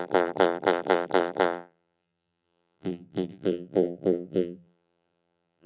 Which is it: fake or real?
fake